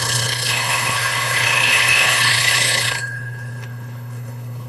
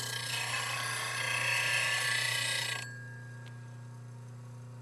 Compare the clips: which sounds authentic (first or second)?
second